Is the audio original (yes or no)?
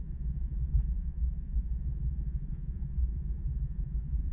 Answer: no